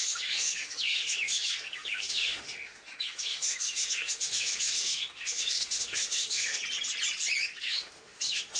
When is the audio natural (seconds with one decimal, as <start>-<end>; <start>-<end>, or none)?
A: 6.6-7.4